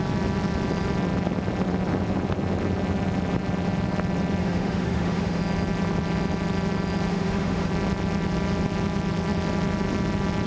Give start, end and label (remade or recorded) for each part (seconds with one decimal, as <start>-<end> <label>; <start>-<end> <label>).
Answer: 0.0-4.4 recorded; 4.4-5.4 remade; 5.4-7.1 recorded; 7.1-7.7 remade; 7.7-10.5 recorded